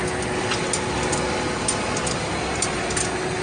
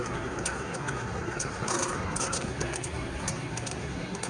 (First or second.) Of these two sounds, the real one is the first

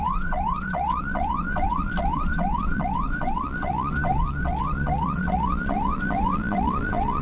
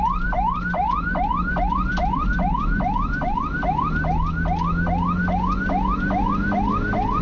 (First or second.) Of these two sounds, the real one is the second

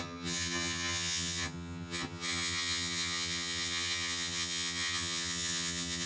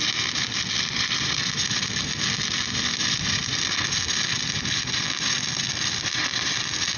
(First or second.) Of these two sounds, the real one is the second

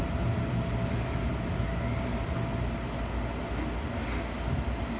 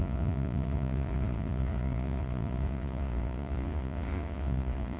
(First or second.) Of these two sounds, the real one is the first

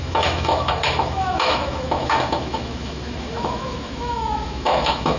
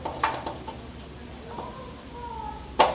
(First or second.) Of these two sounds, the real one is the second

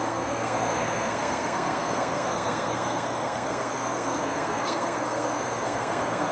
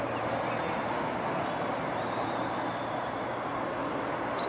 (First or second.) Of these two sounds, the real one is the second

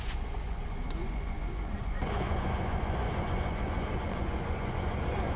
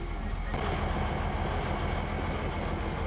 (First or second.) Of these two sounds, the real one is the second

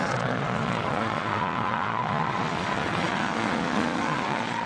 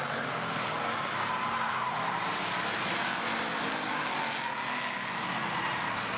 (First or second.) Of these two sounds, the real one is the second